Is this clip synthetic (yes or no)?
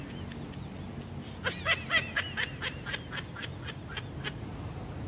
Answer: no